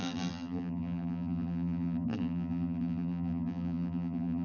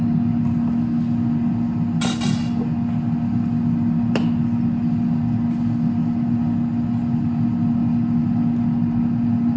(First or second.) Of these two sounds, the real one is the second